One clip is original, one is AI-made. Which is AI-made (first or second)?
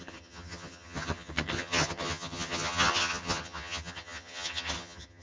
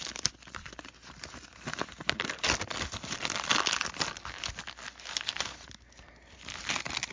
first